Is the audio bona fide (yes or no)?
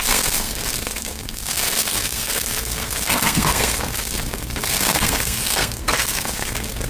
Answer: no